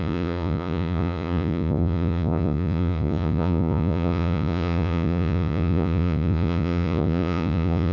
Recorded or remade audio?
remade